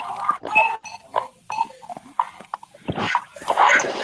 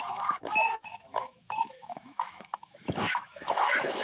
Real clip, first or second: first